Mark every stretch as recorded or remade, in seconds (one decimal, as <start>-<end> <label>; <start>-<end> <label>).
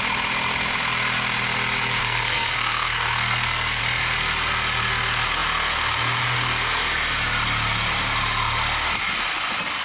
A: 0.0-2.0 recorded; 2.0-3.8 remade; 3.8-9.8 recorded